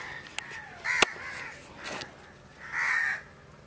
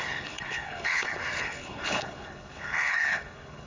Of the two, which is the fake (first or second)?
second